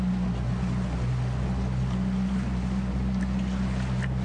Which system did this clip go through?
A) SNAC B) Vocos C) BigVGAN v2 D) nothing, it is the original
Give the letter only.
D